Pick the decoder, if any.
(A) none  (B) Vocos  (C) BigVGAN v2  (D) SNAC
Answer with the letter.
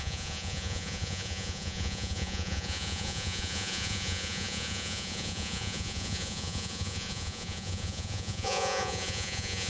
B